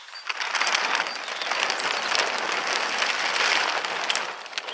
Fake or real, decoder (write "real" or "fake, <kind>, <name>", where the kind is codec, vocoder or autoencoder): real